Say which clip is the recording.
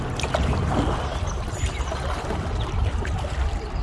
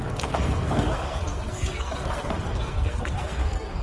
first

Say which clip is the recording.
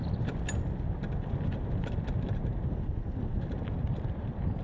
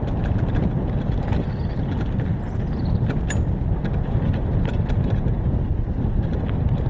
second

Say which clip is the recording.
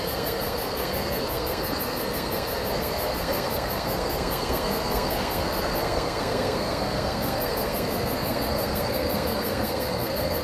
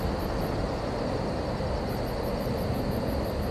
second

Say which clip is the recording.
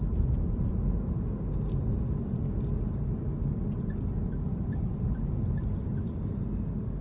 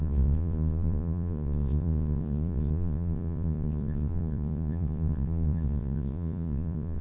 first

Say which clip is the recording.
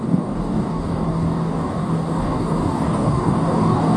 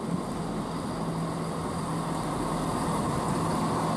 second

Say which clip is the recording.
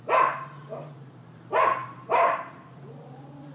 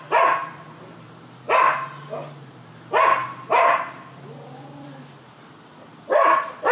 second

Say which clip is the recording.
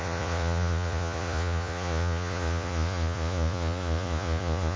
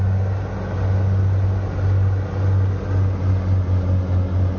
second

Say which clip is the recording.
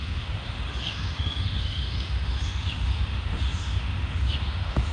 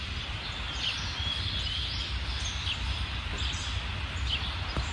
second